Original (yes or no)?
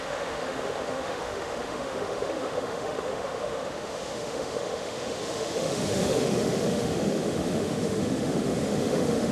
no